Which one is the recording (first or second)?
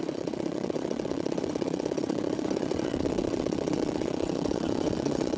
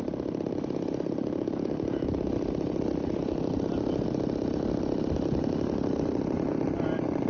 second